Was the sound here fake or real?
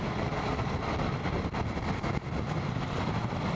real